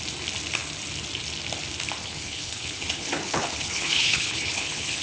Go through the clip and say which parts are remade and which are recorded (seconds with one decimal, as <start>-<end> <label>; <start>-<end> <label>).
0.0-2.0 recorded; 2.0-5.0 remade